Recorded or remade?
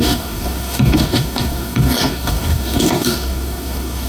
remade